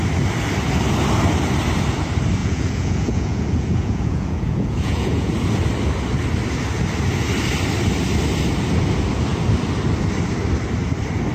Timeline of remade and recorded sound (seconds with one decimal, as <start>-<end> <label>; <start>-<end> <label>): 0.0-2.4 recorded; 2.4-5.3 remade; 5.3-11.3 recorded